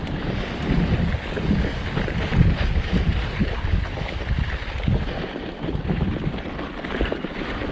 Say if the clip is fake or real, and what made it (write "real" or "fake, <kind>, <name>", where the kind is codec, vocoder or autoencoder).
fake, vocoder, BigVGAN v2